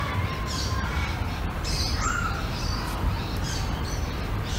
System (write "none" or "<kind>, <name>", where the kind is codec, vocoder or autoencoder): vocoder, BigVGAN v2